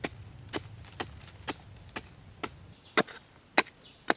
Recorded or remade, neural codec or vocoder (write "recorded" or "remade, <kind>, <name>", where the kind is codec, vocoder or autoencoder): recorded